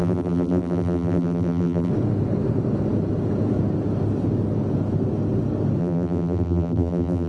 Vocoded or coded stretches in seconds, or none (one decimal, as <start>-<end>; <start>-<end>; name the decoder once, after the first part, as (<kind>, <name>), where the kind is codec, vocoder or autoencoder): 0.0-1.9 (vocoder, BigVGAN v2); 5.8-7.3